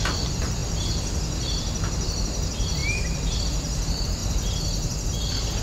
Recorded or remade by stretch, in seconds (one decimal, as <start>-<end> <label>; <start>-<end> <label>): 0.0-4.2 remade; 4.2-5.6 recorded